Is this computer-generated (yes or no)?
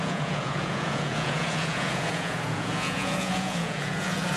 yes